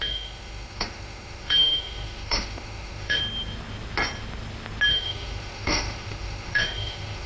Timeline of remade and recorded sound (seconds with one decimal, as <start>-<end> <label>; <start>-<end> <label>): 0.0-3.2 remade; 3.2-4.9 recorded; 4.9-7.3 remade

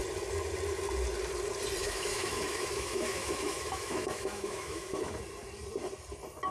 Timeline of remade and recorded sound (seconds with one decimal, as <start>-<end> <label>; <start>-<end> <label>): 0.0-1.8 recorded; 1.8-5.1 remade; 5.1-6.5 recorded